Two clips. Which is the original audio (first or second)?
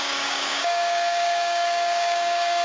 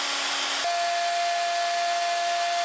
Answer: second